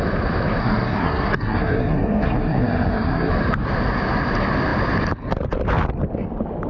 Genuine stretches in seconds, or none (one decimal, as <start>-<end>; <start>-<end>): 0.0-0.6; 3.3-6.7